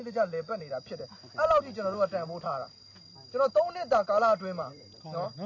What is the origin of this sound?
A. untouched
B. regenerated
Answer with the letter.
A